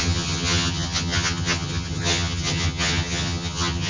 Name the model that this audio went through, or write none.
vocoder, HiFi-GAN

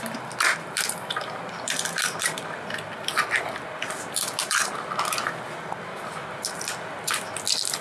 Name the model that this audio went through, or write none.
none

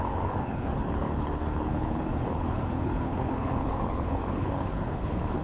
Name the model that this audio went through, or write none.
codec, HILCodec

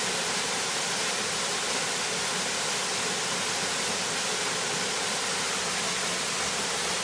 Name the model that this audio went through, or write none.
none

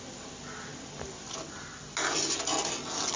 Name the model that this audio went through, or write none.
none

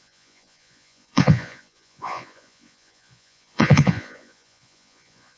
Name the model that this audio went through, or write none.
vocoder, Vocos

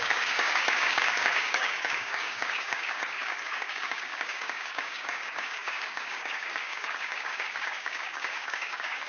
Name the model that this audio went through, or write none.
codec, DAC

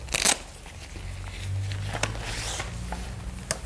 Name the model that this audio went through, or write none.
none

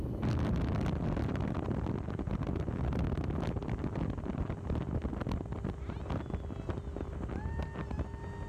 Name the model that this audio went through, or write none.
none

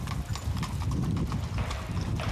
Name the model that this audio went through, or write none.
none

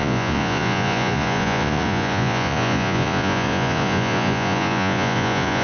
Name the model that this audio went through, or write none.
vocoder, Vocos